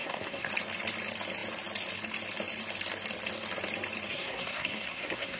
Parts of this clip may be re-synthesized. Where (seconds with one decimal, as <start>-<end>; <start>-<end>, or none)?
0.0-0.5; 4.1-5.4